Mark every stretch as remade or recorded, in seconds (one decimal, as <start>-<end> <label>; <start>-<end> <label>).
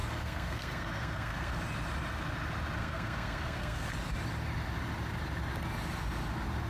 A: 0.0-1.6 remade; 1.6-2.8 recorded; 2.8-3.9 remade; 3.9-6.7 recorded